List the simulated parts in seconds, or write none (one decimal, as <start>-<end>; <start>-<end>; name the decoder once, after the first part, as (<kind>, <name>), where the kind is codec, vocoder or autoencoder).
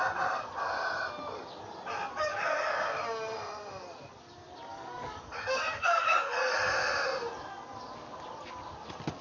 2.1-2.7 (codec, DAC); 4.7-6.7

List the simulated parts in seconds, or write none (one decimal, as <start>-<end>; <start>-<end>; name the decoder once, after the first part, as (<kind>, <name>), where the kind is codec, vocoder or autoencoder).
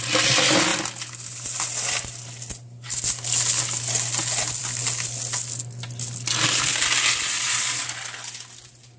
none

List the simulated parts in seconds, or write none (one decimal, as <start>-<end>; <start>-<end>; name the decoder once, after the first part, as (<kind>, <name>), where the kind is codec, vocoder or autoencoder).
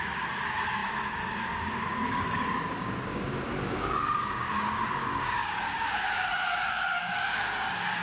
0.0-8.0 (codec, DAC)